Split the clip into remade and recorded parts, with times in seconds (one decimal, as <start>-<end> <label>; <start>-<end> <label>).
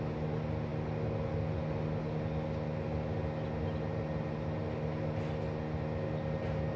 0.0-6.8 recorded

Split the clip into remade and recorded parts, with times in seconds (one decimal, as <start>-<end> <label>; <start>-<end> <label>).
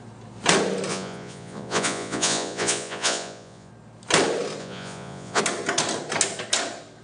0.0-0.9 recorded; 0.9-3.7 remade; 3.7-4.6 recorded; 4.6-5.4 remade; 5.4-7.0 recorded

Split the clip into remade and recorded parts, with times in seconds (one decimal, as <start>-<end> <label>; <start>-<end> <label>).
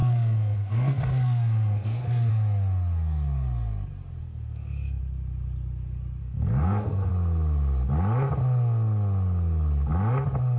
0.0-2.3 remade; 2.3-4.2 recorded; 4.2-5.0 remade; 5.0-6.2 recorded; 6.2-7.1 remade; 7.1-10.6 recorded